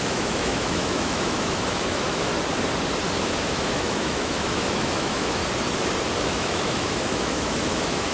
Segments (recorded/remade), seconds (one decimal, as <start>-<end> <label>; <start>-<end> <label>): 0.0-2.3 remade; 2.3-3.2 recorded; 3.2-5.4 remade; 5.4-6.2 recorded; 6.2-8.1 remade